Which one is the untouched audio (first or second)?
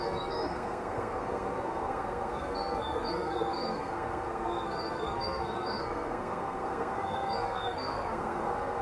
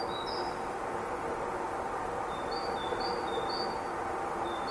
second